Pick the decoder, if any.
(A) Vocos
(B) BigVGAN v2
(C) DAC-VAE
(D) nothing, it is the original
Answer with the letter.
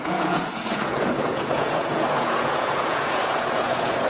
A